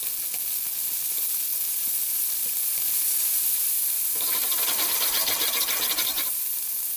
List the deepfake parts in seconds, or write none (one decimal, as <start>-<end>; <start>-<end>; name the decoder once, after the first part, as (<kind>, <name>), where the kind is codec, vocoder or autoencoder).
1.7-5.5 (vocoder, BigVGAN v2); 6.1-7.0

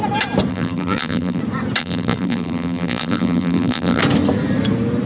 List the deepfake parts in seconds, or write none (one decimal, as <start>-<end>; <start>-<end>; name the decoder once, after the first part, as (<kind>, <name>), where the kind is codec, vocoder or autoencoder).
0.5-1.4 (vocoder, BigVGAN v2); 1.8-4.0